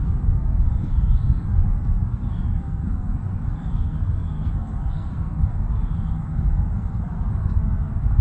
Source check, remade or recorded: remade